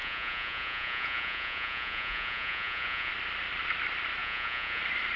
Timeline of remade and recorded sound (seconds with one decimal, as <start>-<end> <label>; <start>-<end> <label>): 0.0-3.1 remade; 3.1-4.2 recorded; 4.2-4.8 remade; 4.8-5.2 recorded